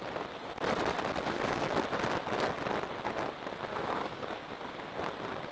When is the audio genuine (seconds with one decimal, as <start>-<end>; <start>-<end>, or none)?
0.0-3.7; 4.3-5.5